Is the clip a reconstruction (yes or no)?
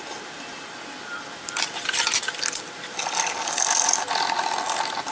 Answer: yes